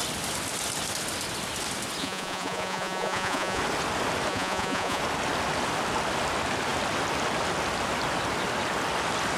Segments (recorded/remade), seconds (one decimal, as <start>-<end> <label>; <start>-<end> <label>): 0.0-2.0 recorded; 2.0-3.6 remade; 3.6-4.3 recorded; 4.3-5.0 remade; 5.0-9.4 recorded